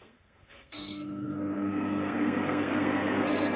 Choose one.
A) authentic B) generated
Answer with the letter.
B